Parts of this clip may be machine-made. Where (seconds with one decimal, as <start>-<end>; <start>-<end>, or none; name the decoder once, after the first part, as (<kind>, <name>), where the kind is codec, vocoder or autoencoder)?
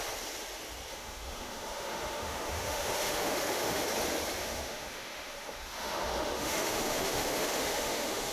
0.9-3.8 (autoencoder, DAC-VAE); 4.4-8.3